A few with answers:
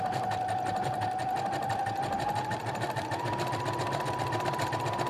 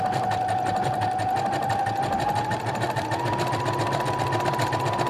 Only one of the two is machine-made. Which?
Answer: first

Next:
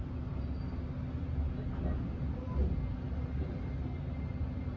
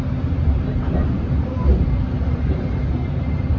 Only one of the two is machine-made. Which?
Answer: second